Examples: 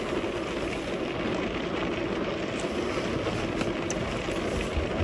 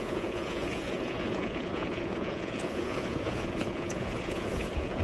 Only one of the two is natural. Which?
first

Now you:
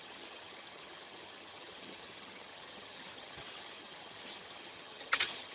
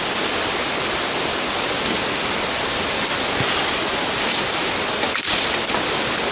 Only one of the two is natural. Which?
second